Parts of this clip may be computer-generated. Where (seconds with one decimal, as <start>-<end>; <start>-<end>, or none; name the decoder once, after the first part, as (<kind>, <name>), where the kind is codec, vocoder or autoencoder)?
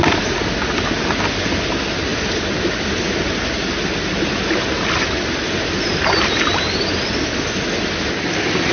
none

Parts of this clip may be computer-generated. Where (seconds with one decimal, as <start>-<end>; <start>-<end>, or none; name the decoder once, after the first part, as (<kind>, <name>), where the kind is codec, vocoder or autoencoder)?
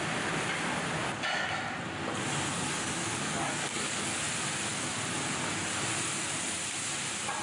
2.5-4.2 (codec, DAC)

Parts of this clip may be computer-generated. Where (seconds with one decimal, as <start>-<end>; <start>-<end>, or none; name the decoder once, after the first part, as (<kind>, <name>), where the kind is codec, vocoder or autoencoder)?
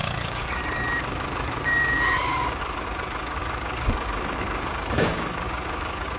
0.0-6.2 (codec, DAC)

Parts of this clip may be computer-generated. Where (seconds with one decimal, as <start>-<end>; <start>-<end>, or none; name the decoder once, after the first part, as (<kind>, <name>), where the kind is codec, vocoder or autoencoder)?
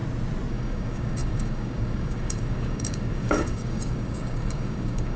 0.5-5.2 (codec, DAC)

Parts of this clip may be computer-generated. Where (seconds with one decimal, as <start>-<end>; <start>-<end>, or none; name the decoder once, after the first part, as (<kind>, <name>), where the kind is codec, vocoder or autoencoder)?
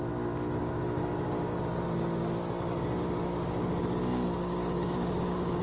0.6-1.6 (codec, DAC); 3.0-5.6